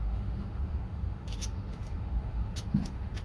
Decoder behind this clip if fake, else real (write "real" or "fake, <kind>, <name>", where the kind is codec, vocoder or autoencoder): fake, autoencoder, DAC-VAE